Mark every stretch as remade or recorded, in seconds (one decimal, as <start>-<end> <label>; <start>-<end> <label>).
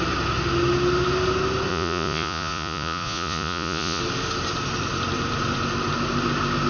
0.0-1.7 recorded; 1.7-4.0 remade; 4.0-6.7 recorded